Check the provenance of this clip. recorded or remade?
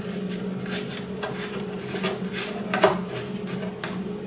recorded